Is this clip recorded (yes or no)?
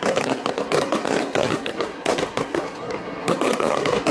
no